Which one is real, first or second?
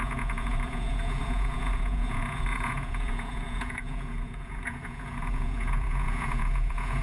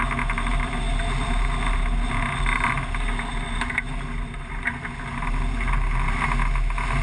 second